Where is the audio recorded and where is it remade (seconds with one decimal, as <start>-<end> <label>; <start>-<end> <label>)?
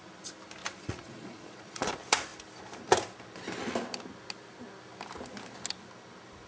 0.0-0.6 recorded; 0.6-1.9 remade; 1.9-6.5 recorded